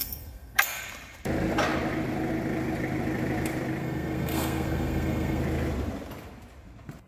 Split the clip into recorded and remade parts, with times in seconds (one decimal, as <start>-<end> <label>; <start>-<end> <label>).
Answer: 0.0-0.9 remade; 0.9-3.8 recorded; 3.8-5.4 remade; 5.4-7.1 recorded